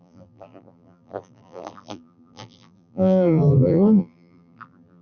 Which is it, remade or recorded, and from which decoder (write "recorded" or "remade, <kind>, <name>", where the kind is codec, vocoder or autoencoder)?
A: remade, vocoder, BigVGAN v2